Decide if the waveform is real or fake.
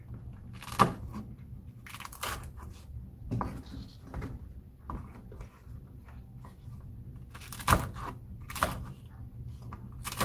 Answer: real